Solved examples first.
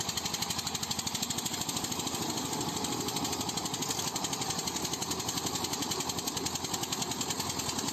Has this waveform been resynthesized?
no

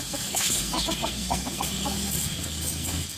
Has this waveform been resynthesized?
yes